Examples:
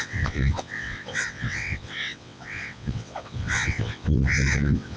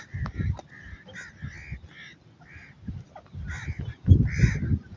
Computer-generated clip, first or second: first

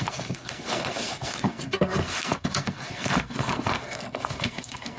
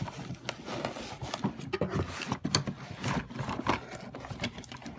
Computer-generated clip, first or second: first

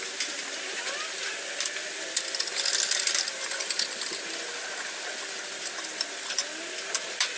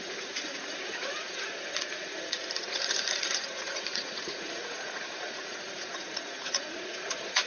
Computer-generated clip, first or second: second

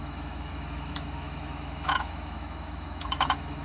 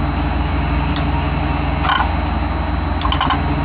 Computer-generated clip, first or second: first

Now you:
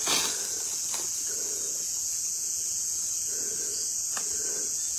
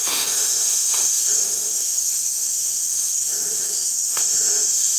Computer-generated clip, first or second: second